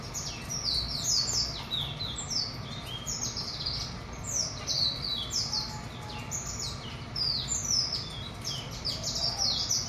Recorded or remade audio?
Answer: recorded